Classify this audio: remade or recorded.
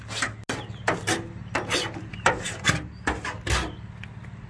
recorded